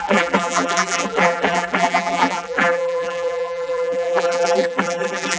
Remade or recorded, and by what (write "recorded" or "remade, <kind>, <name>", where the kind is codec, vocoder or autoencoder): remade, vocoder, BigVGAN v2